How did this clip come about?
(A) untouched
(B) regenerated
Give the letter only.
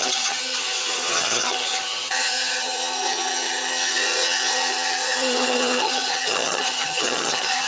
B